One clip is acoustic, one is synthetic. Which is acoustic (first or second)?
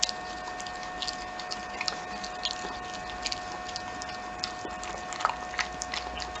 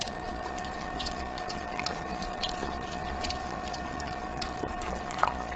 first